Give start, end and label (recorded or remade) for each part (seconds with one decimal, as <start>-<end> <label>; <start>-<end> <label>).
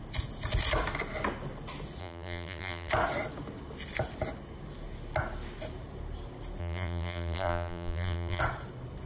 0.0-2.0 recorded; 2.0-2.9 remade; 2.9-6.6 recorded; 6.6-8.4 remade; 8.4-9.1 recorded